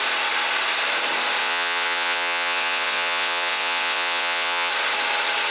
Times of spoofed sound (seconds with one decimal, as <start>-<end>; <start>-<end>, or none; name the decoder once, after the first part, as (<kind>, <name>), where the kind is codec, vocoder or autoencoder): 1.4-4.7 (vocoder, WaveNeXt)